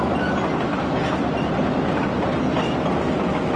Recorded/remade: recorded